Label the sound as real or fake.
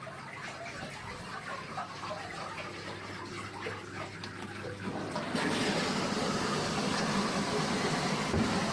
real